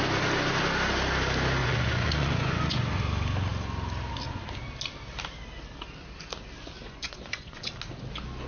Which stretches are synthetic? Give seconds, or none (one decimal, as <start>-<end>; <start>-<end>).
1.6-3.0; 6.8-7.7